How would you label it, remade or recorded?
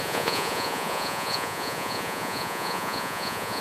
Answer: remade